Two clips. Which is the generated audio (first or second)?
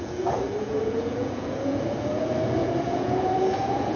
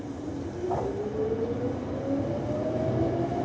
first